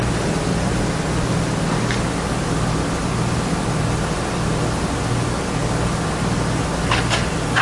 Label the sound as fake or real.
real